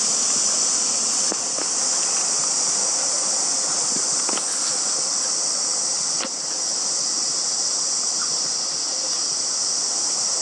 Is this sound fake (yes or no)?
no